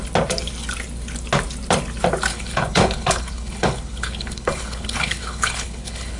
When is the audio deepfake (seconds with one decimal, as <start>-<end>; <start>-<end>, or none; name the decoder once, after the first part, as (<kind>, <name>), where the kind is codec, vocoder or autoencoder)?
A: 2.3-6.2 (codec, HILCodec)